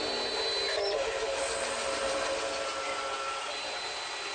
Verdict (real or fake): real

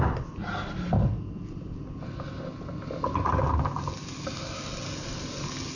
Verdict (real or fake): real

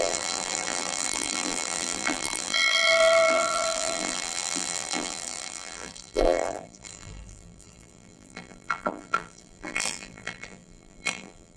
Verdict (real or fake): fake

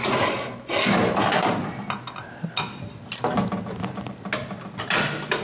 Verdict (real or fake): real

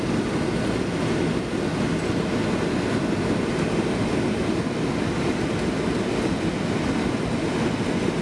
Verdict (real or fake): real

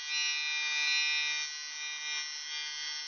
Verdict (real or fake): real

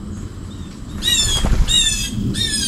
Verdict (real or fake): fake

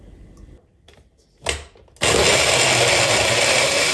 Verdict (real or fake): real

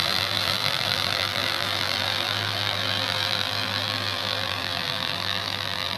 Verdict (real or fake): fake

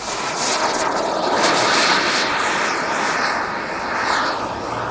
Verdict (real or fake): real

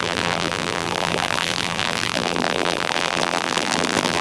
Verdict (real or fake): fake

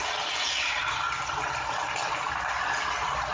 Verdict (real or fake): real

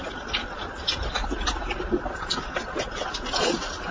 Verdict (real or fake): real